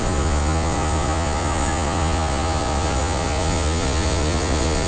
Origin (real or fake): fake